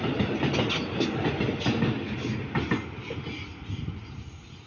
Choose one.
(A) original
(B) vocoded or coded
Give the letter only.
A